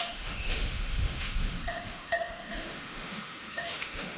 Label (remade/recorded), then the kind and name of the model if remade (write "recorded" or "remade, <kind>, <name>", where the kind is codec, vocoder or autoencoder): remade, autoencoder, DAC-VAE